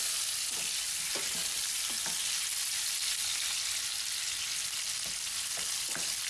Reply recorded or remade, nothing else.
recorded